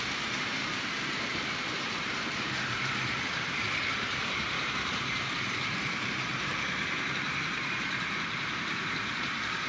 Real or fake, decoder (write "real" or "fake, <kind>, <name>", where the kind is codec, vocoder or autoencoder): fake, vocoder, BigVGAN v2